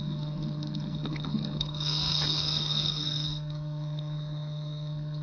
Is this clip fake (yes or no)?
yes